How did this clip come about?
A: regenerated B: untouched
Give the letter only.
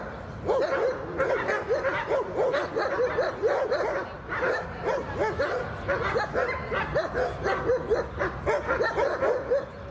B